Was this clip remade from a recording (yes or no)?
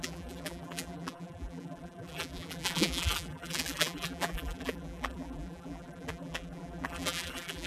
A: yes